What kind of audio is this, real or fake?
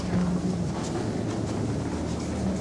real